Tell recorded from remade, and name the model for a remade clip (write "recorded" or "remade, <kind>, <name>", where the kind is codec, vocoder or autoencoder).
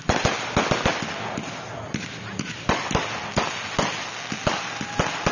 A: recorded